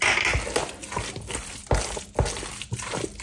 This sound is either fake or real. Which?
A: real